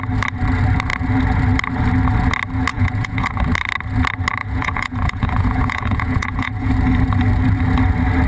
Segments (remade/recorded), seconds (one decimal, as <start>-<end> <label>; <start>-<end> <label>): 0.0-2.7 recorded; 2.7-3.4 remade; 3.4-4.4 recorded; 4.4-6.7 remade; 6.7-8.3 recorded